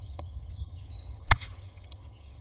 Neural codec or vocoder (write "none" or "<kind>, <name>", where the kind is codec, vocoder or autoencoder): vocoder, HiFi-GAN